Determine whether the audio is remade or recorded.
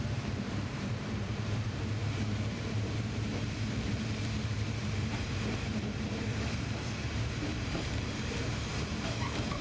remade